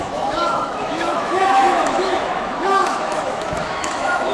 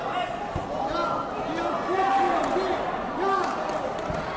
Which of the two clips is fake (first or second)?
first